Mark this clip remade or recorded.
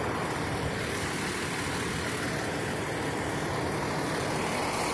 recorded